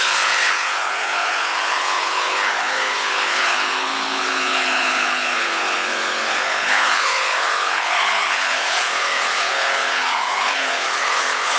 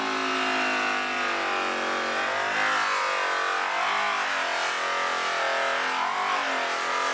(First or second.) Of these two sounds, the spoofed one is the first